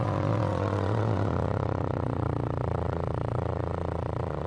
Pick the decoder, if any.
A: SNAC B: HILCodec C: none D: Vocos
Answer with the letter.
D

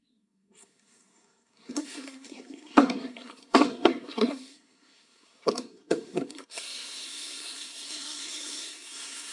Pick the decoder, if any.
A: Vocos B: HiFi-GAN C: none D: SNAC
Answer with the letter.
D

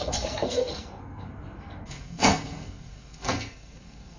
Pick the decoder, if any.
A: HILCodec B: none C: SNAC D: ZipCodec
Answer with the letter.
C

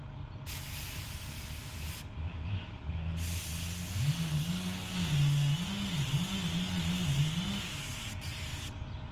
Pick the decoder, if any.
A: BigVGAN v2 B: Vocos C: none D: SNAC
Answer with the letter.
C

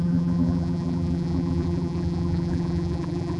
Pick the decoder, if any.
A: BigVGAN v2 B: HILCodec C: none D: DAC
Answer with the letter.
A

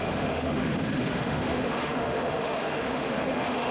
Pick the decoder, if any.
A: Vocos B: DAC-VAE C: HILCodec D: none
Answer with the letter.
B